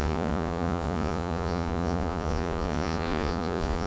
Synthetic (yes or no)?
yes